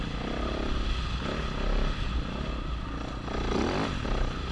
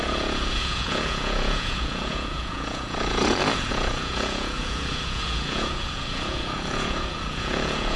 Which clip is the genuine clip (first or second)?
first